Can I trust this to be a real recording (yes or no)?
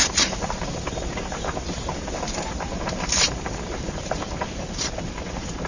no